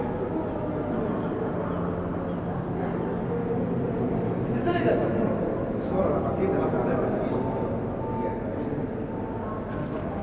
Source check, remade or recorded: recorded